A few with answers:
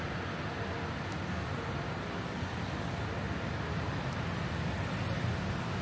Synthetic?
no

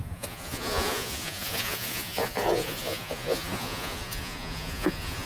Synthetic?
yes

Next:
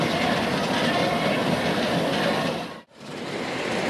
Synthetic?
no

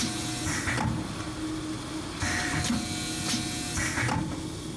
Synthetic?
no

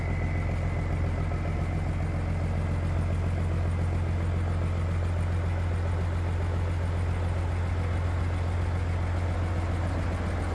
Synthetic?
no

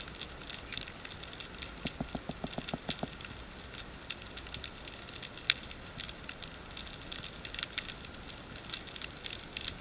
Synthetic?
no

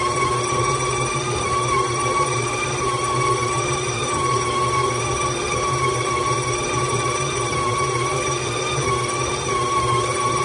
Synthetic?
yes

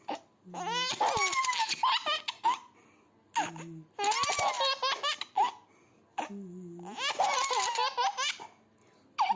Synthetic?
no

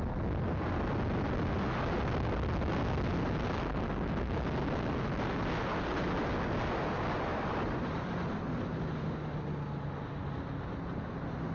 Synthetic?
no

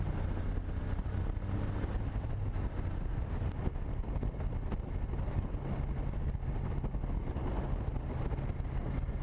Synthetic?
no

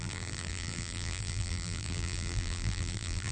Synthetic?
yes